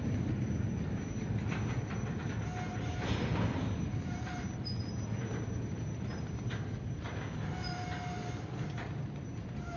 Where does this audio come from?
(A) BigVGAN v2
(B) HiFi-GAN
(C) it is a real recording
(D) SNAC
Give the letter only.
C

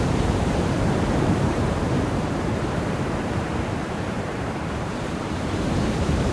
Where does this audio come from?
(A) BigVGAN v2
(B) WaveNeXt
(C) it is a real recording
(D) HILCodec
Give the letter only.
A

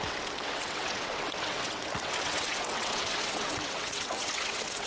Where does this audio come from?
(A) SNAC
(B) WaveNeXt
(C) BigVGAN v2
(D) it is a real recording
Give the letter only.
B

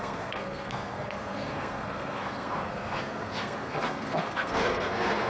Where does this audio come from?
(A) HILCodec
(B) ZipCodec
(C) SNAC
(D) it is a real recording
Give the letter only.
C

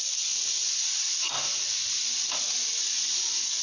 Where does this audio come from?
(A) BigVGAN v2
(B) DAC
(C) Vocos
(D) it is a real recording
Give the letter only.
D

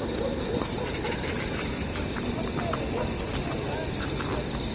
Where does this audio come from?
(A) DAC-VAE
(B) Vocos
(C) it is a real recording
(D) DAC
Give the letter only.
C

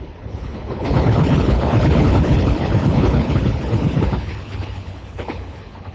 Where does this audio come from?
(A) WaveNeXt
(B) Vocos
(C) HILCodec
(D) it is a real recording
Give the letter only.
C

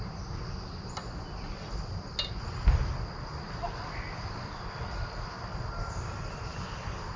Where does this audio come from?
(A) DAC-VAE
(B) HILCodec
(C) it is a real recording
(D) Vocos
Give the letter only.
C